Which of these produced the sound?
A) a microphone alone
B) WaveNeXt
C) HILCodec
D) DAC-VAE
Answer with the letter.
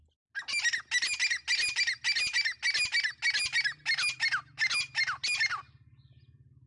A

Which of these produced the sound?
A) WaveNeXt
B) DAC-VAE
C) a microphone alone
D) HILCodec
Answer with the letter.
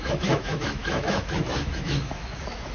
B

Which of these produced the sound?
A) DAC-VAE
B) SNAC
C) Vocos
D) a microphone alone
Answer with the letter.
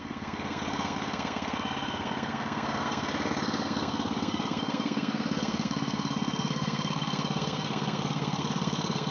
B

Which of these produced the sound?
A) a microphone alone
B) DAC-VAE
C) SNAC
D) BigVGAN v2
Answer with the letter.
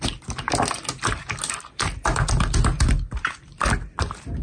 A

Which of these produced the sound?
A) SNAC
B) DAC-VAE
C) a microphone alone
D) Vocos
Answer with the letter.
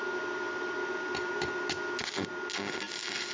C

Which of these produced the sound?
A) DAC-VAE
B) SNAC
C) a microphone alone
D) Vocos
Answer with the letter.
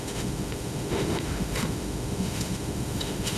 A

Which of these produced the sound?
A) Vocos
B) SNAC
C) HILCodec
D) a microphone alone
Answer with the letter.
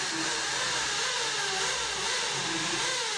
D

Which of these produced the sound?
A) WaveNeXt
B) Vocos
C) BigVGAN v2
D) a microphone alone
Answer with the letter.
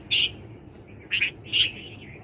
D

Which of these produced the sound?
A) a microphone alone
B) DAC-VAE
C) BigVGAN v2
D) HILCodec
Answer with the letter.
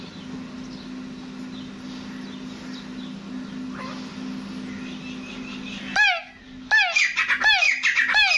A